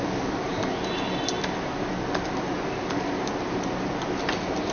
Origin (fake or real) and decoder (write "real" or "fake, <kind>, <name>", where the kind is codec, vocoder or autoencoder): real